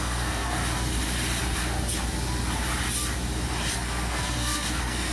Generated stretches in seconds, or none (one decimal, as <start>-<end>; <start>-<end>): 0.0-0.6; 3.7-5.1